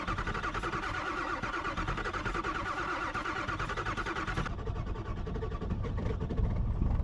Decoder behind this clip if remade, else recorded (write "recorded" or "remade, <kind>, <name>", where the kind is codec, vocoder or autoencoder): recorded